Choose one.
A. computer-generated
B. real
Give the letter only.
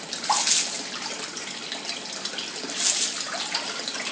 B